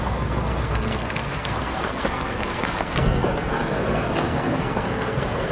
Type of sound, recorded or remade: remade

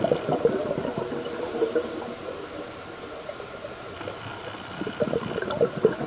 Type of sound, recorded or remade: recorded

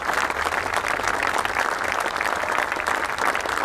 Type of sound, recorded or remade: recorded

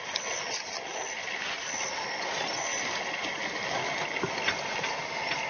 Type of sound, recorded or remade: recorded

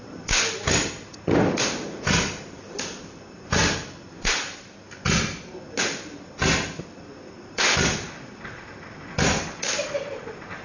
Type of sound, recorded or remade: recorded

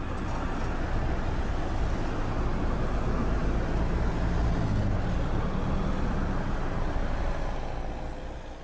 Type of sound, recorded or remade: recorded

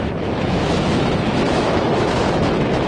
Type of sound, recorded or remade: remade